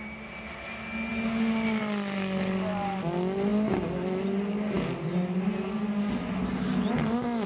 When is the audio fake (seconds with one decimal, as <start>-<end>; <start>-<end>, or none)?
none